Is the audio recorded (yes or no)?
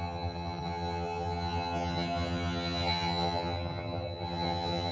no